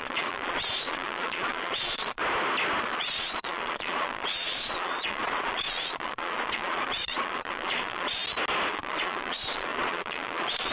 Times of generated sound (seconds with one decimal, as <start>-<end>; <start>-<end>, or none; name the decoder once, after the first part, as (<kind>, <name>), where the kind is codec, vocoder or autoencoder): 0.0-2.2 (vocoder, Vocos); 2.8-8.2; 8.7-10.7